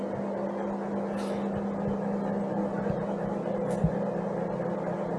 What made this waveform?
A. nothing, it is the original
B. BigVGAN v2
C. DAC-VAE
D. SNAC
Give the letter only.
A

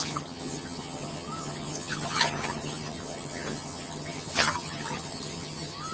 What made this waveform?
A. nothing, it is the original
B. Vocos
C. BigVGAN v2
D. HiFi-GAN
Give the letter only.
D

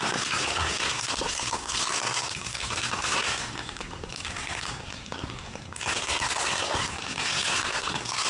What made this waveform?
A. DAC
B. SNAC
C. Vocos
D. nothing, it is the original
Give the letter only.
B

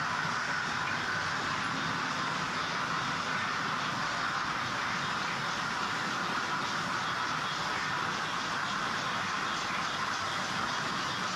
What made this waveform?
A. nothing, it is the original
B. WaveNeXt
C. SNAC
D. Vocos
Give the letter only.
A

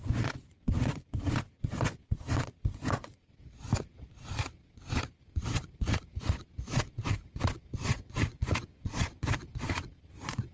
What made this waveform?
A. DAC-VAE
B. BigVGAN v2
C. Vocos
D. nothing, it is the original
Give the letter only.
C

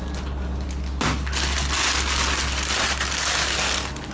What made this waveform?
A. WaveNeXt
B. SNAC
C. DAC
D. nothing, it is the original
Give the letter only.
D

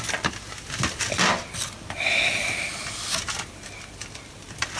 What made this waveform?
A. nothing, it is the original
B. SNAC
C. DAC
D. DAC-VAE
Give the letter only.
A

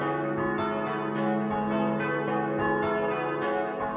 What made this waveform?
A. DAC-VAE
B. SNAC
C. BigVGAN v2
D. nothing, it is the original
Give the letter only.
D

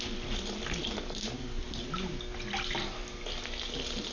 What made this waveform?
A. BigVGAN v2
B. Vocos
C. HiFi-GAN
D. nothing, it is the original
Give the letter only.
D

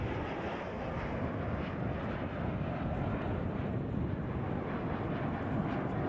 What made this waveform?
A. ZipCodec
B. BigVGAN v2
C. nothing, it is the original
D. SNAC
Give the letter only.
C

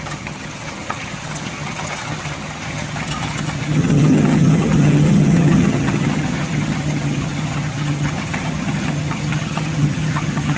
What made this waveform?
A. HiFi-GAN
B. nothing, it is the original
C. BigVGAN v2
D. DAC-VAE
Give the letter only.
A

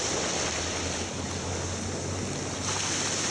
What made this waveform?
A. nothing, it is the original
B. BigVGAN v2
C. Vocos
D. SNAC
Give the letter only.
A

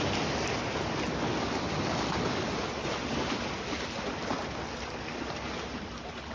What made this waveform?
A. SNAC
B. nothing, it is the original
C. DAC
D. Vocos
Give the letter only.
B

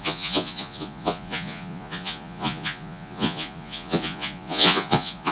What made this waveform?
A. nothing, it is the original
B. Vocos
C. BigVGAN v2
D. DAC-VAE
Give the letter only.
B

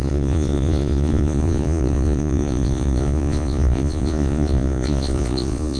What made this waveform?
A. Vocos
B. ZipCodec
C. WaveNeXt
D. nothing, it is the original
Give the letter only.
A